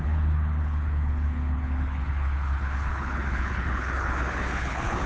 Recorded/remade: remade